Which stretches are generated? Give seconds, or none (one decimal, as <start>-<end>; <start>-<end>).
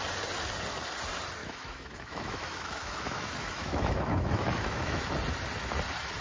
1.4-5.1